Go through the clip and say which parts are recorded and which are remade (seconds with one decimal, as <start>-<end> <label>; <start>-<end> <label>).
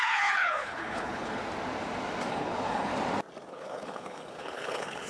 0.0-1.4 remade; 1.4-2.3 recorded; 2.3-2.9 remade; 2.9-3.5 recorded; 3.5-5.1 remade